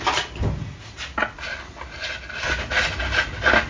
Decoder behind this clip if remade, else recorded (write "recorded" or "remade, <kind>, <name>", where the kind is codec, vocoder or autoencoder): recorded